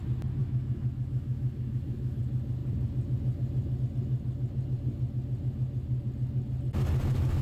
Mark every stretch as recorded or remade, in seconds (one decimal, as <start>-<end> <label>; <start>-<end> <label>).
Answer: 0.0-0.4 recorded; 0.4-2.2 remade; 2.2-7.4 recorded